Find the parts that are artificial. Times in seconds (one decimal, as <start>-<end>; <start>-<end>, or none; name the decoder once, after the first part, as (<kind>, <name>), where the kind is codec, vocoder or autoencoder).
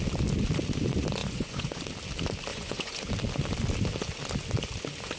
1.2-1.8 (vocoder, Vocos); 2.5-3.1